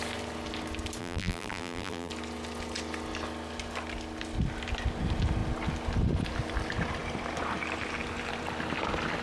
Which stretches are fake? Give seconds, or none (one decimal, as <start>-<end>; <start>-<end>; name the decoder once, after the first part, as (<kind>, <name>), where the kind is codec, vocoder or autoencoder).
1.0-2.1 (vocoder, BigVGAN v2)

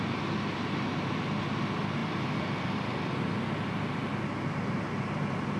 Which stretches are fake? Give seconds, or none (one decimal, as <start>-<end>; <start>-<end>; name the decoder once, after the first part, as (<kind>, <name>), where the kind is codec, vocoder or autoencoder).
2.0-3.4 (vocoder, BigVGAN v2)

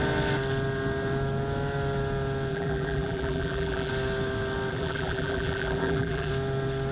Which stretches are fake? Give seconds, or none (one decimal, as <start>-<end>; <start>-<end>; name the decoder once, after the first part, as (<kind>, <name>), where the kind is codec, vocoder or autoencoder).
2.5-3.9 (vocoder, BigVGAN v2); 4.7-6.3